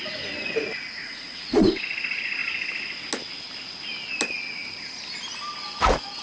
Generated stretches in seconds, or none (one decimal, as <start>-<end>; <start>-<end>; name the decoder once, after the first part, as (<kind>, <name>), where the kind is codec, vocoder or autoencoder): 1.0-1.7 (vocoder, Vocos)

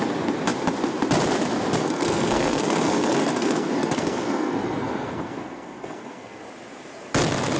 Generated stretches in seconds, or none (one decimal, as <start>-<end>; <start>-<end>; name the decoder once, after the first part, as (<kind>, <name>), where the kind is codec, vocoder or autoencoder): 1.8-6.4 (codec, SNAC)

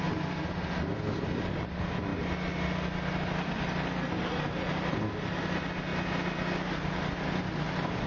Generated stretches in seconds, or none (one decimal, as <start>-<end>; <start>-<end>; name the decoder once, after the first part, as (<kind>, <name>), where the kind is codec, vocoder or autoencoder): none

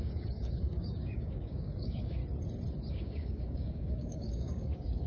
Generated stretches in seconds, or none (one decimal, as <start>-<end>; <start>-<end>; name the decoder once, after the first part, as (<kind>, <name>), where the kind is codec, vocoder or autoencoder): 0.0-2.2 (codec, DAC); 2.9-5.1

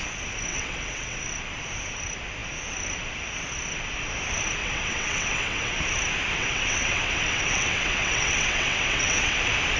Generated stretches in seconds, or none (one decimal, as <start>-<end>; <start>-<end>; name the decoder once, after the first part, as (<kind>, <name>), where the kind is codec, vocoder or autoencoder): 0.5-1.2 (vocoder, WaveNeXt); 4.6-5.8; 6.4-9.4

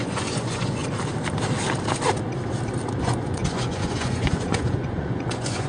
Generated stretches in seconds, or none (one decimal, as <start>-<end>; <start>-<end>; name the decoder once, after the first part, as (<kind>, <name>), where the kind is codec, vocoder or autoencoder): 0.0-0.8 (vocoder, Vocos); 3.0-5.7